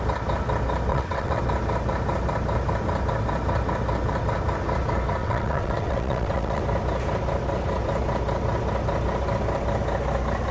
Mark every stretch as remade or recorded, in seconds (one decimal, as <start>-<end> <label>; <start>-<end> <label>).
0.0-0.9 recorded; 0.9-1.4 remade; 1.4-5.2 recorded; 5.2-6.6 remade; 6.6-10.5 recorded